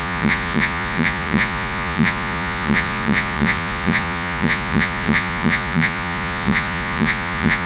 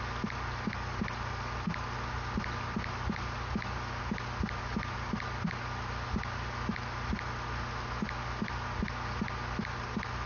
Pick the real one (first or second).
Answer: second